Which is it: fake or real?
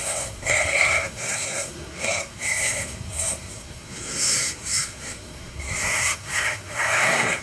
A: fake